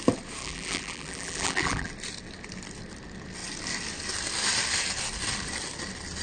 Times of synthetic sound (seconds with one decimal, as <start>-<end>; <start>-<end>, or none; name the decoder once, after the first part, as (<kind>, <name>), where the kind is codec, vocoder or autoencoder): 0.4-1.9 (vocoder, BigVGAN v2)